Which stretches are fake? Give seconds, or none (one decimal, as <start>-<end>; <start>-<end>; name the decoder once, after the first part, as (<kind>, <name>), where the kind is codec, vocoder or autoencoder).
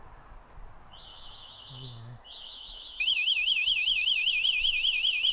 1.1-4.3 (autoencoder, DAC-VAE)